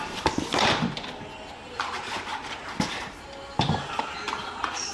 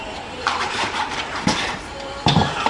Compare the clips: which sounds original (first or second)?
first